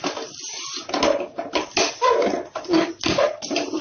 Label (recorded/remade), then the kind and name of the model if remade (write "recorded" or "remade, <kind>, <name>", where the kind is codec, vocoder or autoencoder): recorded